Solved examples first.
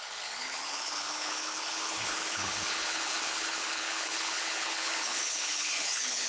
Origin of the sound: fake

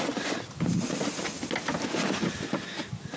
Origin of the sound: real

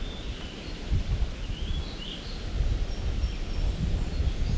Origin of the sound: real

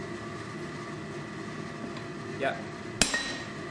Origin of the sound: real